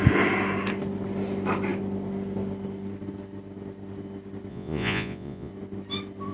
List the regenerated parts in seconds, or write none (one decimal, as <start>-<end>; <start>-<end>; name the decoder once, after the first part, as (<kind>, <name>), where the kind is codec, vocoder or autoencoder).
4.5-5.5 (vocoder, Vocos)